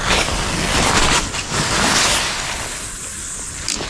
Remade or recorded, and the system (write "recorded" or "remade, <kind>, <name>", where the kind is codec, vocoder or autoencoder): recorded